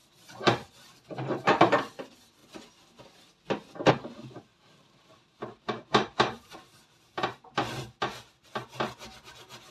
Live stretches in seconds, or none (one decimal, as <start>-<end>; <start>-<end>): 0.7-4.5; 7.6-9.7